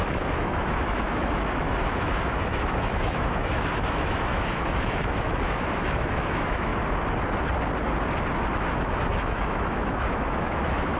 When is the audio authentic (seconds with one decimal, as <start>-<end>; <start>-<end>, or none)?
6.7-8.5